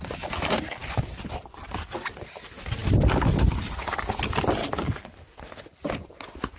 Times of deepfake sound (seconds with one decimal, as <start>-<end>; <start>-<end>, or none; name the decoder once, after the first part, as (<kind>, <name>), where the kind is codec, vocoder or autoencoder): 4.6-5.1 (codec, DAC)